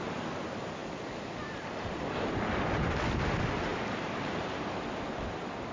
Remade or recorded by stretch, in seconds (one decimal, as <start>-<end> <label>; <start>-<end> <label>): 0.0-0.8 recorded; 0.8-2.3 remade; 2.3-3.7 recorded; 3.7-4.2 remade; 4.2-5.7 recorded